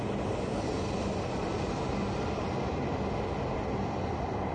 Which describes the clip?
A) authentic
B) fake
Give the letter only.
A